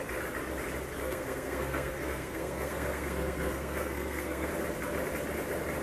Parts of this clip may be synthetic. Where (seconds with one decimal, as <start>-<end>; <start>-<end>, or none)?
1.0-4.5